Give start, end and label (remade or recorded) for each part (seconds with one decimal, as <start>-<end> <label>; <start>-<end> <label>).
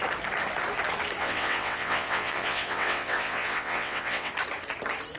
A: 0.0-1.2 recorded; 1.2-4.3 remade; 4.3-5.2 recorded